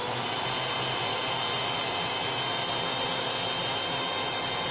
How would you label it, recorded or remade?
recorded